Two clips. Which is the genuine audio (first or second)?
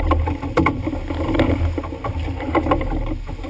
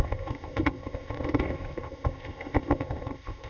first